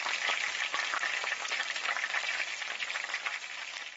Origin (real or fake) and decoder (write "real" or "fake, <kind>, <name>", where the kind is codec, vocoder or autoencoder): real